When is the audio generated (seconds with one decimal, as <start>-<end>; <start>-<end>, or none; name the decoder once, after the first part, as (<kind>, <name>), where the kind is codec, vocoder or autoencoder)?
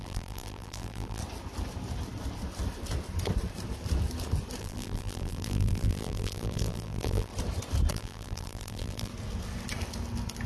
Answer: 0.0-1.2 (vocoder, BigVGAN v2); 4.6-7.3; 7.9-9.1